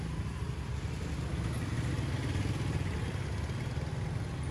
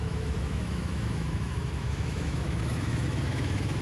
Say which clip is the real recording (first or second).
first